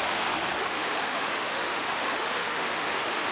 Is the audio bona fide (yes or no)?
no